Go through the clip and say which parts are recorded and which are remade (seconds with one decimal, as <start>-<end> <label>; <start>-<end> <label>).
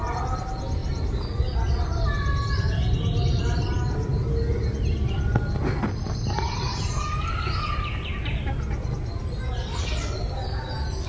0.0-11.1 recorded